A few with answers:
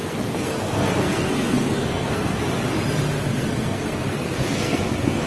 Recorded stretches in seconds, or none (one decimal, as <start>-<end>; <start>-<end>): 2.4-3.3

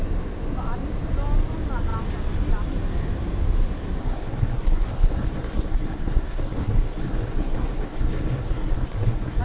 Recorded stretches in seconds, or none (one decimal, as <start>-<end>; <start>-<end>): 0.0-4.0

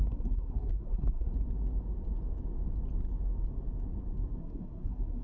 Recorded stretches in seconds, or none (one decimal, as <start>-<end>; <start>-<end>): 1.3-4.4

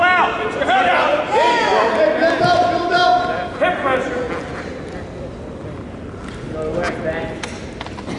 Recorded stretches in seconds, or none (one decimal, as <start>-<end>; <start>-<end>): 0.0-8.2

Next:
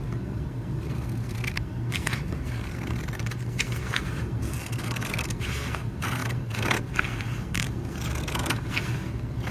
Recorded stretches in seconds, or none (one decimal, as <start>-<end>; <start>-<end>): none

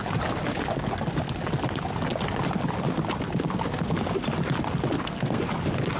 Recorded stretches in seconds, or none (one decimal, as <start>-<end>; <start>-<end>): 0.0-4.9; 5.4-6.0